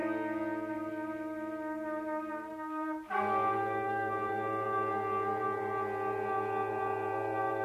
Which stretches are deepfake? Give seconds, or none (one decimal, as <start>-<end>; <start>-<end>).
0.7-7.6